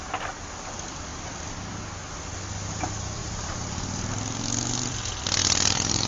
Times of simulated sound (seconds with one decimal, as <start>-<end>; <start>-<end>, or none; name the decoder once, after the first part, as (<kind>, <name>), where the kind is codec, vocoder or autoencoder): 1.1-1.7 (vocoder, BigVGAN v2); 3.2-4.1; 5.4-6.1